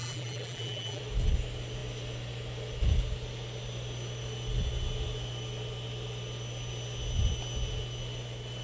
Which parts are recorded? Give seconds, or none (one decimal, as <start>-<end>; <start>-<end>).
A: 1.0-8.6